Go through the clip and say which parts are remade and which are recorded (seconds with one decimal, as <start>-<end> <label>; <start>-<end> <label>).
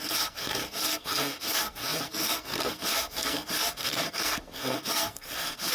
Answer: 0.0-5.7 remade